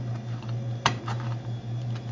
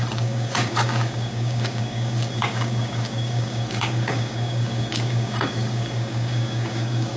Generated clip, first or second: second